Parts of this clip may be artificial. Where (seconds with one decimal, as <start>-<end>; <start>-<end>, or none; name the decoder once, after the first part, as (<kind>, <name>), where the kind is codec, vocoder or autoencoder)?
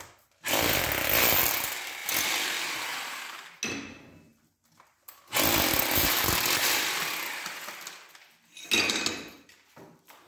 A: none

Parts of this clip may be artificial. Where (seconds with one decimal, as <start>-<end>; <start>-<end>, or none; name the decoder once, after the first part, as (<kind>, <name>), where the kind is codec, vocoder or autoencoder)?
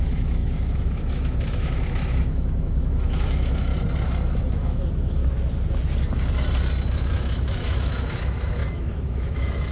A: 0.0-3.7 (autoencoder, DAC-VAE); 4.5-5.2; 6.9-9.7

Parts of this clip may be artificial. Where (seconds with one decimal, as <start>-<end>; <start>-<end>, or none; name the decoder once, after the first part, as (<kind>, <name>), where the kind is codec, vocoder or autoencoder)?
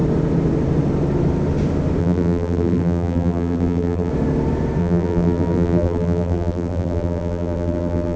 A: 2.0-4.1 (vocoder, BigVGAN v2); 4.8-8.2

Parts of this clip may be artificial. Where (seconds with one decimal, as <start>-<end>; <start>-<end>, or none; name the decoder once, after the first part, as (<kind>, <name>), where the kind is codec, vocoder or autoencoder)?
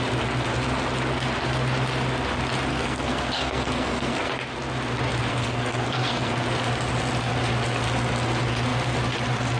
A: 2.7-4.3 (codec, SNAC); 5.3-6.3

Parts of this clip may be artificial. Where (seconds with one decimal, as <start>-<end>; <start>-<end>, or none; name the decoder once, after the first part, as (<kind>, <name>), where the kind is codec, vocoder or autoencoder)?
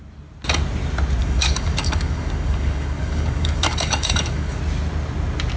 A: 1.2-4.6 (codec, DAC)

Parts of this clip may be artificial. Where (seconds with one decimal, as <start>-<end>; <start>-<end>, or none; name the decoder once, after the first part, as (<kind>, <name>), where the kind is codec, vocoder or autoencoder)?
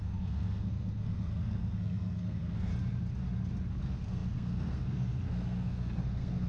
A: 0.0-2.7 (codec, SNAC); 3.8-6.5